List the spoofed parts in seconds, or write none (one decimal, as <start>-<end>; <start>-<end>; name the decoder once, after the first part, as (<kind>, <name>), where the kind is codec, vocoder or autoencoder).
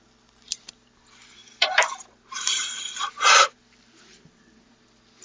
1.2-4.3 (vocoder, BigVGAN v2)